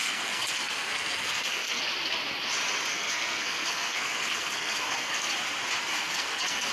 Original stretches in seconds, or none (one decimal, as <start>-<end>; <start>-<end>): 1.8-2.9; 5.3-5.8